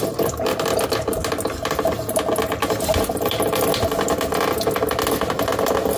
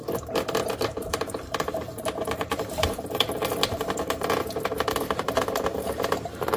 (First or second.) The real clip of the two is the first